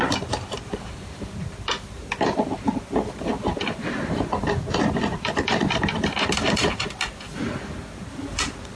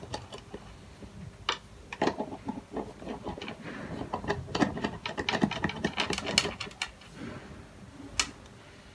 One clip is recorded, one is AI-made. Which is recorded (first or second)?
second